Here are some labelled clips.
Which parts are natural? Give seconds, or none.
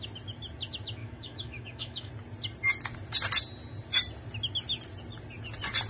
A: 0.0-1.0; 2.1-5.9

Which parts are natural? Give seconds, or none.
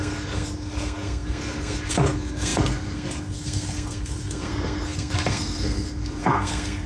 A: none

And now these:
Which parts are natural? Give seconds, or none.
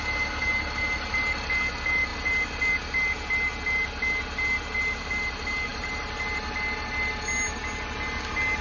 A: 0.0-8.6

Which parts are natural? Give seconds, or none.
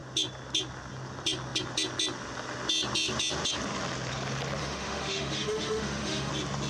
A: 0.0-4.6; 6.3-6.7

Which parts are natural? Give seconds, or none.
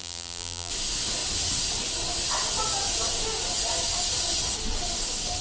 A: 0.7-5.4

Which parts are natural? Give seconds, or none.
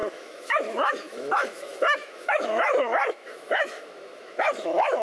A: none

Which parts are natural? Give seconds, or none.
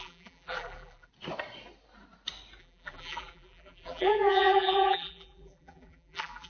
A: 1.1-2.6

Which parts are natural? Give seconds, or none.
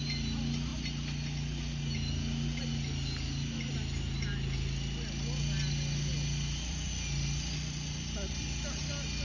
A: 0.0-6.1; 6.9-9.2